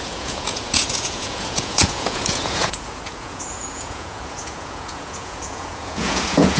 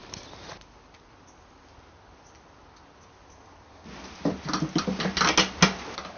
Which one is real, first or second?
second